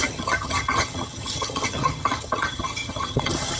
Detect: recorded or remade remade